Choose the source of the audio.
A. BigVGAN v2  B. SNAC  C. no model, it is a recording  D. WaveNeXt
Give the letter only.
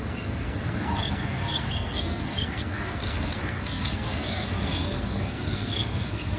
B